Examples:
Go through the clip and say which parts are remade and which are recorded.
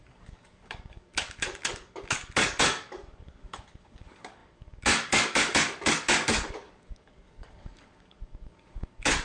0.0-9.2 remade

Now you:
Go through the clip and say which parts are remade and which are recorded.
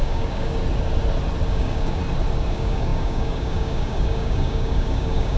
0.0-0.6 remade; 0.6-1.5 recorded; 1.5-2.0 remade; 2.0-2.5 recorded; 2.5-5.4 remade